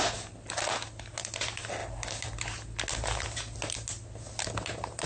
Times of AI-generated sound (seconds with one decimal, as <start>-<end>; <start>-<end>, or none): none